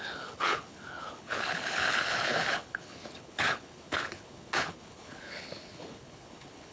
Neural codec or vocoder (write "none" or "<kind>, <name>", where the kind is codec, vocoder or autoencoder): codec, HILCodec